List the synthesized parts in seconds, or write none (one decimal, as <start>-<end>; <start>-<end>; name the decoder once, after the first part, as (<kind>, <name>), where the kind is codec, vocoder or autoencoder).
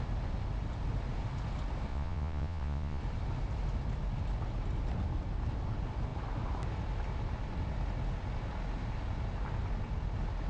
1.9-3.0 (vocoder, Vocos)